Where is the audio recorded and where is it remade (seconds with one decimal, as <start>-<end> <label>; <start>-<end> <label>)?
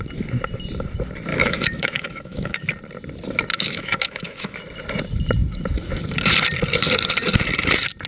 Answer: 0.0-1.3 recorded; 1.3-2.7 remade; 2.7-3.5 recorded; 3.5-4.6 remade; 4.6-8.1 recorded